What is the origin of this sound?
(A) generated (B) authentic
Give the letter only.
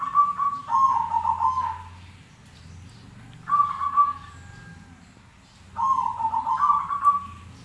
B